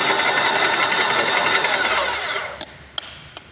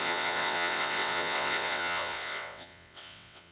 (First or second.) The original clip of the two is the first